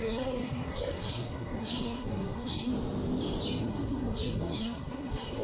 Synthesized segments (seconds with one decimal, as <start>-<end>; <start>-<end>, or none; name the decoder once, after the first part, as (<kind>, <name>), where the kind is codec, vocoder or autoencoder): 0.0-2.7 (codec, SNAC); 3.6-5.4

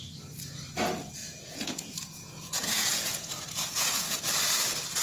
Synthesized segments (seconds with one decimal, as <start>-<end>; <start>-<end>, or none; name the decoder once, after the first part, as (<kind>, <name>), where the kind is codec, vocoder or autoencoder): 1.2-4.2 (vocoder, Vocos)

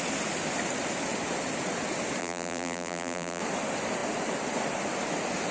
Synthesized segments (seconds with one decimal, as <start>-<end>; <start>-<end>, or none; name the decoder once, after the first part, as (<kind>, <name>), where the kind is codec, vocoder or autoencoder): 2.2-3.4 (vocoder, BigVGAN v2)

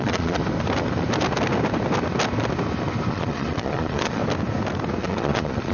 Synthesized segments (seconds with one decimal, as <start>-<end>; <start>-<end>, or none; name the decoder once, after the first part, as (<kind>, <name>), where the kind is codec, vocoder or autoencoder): 0.0-0.4 (vocoder, Vocos); 3.1-4.2; 5.0-5.7

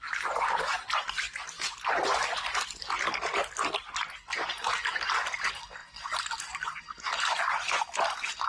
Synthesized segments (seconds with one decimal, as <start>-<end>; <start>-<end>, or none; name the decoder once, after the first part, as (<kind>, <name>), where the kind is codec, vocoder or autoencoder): none

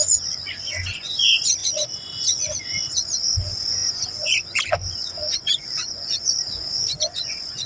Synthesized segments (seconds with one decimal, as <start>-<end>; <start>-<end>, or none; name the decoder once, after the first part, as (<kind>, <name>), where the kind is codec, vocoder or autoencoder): 0.0-7.7 (vocoder, Vocos)

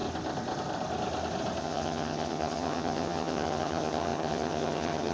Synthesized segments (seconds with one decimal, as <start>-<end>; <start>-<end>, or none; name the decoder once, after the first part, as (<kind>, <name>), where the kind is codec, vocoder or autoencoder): 1.6-5.1 (vocoder, HiFi-GAN)